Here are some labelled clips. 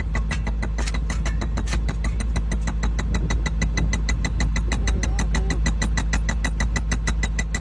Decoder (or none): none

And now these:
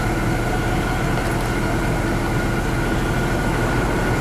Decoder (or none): none